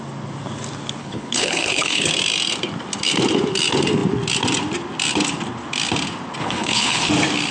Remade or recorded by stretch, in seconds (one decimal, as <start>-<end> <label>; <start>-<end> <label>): 0.0-1.0 recorded; 1.0-2.1 remade; 2.1-6.4 recorded; 6.4-7.1 remade; 7.1-7.5 recorded